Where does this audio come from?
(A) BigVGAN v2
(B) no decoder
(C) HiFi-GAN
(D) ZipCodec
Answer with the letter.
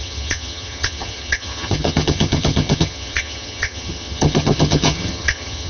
C